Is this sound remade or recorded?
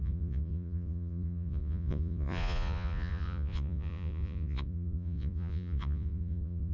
remade